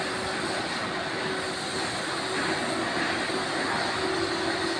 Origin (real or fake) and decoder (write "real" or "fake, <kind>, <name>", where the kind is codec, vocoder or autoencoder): real